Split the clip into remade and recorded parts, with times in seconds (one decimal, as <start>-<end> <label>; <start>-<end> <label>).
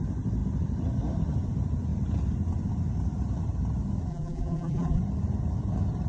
0.0-4.1 recorded; 4.1-5.0 remade; 5.0-6.1 recorded